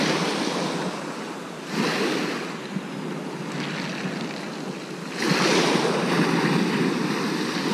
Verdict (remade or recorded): recorded